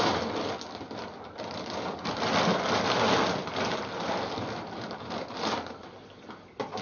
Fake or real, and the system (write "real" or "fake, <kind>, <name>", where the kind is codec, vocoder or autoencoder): real